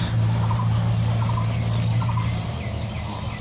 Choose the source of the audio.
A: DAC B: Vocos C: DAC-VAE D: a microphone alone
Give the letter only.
D